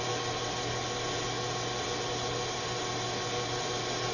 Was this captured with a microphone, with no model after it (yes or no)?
yes